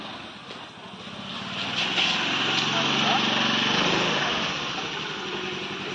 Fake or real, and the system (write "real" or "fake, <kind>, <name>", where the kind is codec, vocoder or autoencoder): real